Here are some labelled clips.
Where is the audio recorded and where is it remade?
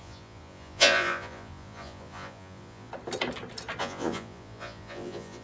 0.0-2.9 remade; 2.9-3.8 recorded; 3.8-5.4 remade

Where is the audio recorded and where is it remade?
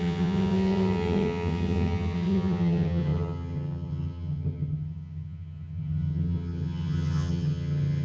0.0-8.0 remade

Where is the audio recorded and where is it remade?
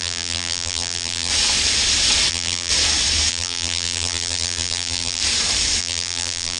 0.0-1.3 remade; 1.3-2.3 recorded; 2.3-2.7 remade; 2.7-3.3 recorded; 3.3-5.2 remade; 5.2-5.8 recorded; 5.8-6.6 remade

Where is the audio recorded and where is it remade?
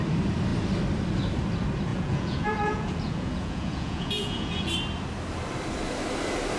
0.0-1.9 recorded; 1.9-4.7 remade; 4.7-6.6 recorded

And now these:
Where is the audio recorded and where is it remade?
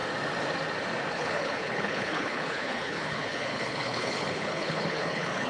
0.0-1.1 recorded; 1.1-5.5 remade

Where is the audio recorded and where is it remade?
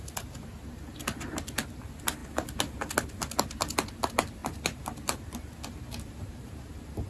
0.0-4.4 recorded; 4.4-7.1 remade